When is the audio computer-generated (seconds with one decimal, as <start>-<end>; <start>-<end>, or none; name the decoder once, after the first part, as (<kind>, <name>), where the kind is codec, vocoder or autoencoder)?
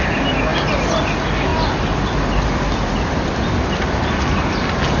none